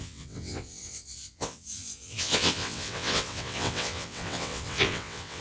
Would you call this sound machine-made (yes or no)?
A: yes